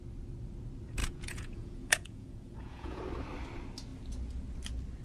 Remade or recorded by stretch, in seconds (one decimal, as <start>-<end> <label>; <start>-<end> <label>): 0.0-1.0 recorded; 1.0-3.0 remade; 3.0-5.0 recorded